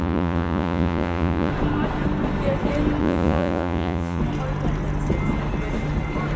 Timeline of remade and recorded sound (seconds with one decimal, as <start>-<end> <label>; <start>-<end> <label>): 0.0-1.5 remade; 1.5-3.0 recorded; 3.0-4.2 remade; 4.2-6.4 recorded